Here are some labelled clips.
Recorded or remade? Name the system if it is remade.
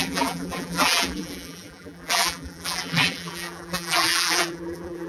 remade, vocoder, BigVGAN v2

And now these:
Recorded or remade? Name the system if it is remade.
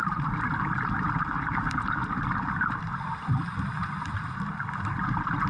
recorded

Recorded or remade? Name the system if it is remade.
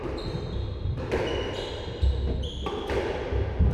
recorded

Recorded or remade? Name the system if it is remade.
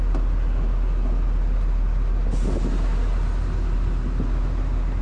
recorded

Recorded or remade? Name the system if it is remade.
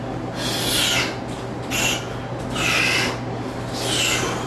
recorded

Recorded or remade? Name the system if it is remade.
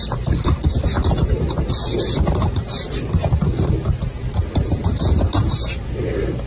remade, vocoder, BigVGAN v2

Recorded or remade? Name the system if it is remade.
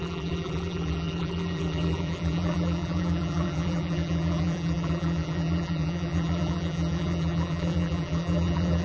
remade, vocoder, BigVGAN v2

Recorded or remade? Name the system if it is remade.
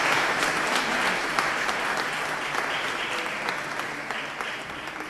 remade, vocoder, BigVGAN v2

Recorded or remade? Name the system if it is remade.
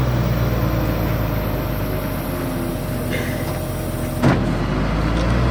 recorded